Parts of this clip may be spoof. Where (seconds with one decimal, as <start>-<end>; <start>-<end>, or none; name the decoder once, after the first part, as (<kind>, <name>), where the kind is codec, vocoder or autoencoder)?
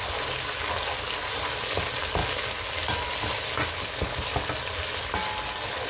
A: none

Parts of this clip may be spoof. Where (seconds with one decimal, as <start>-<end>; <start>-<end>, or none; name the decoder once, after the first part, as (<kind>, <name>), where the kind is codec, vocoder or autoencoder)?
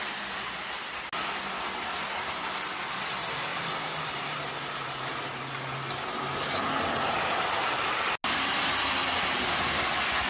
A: none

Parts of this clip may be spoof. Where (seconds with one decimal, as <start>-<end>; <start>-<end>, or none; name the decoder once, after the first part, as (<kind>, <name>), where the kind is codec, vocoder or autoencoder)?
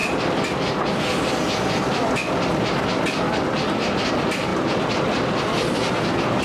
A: 4.5-5.4 (vocoder, BigVGAN v2)